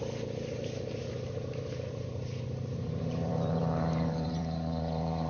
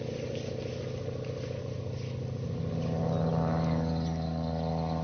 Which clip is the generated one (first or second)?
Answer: first